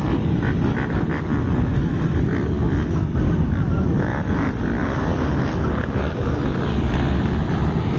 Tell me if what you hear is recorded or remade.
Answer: recorded